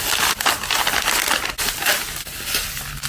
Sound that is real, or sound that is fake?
real